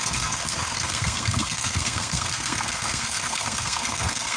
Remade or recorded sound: remade